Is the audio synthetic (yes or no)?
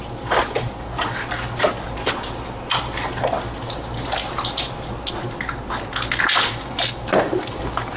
no